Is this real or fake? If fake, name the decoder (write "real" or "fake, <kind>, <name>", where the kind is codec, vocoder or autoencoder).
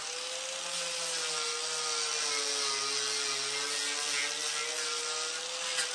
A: real